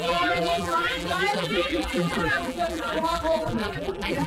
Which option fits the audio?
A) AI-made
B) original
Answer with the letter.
A